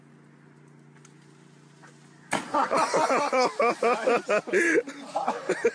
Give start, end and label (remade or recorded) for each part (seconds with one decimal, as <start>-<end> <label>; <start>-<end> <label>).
0.0-5.7 recorded